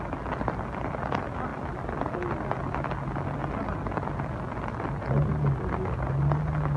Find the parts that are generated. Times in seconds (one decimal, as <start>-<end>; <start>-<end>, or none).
none